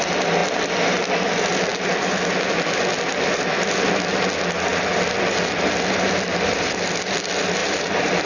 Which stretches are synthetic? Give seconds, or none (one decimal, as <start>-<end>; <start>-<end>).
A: 7.6-8.3